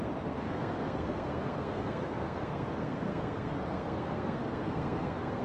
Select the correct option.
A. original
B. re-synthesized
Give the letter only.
B